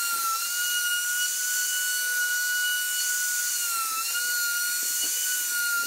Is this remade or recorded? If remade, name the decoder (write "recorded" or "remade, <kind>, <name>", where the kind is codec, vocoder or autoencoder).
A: recorded